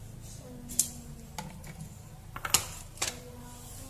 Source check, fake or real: real